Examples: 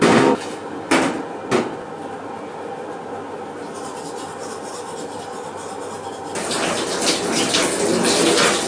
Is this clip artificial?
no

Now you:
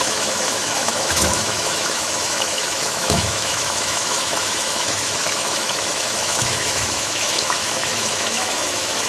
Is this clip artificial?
yes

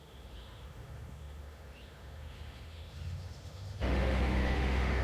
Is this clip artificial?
yes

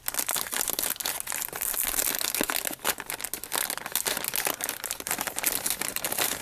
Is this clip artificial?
no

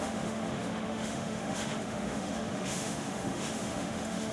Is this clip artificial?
yes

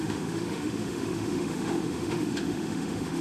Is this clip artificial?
yes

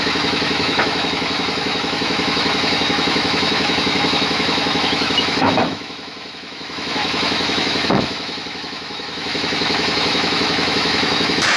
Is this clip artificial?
yes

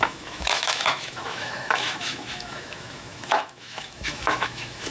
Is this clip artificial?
yes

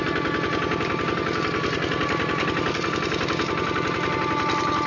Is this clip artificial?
no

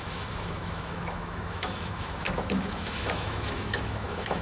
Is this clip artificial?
yes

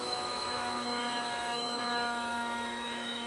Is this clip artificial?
yes